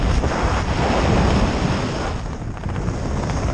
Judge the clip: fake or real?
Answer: real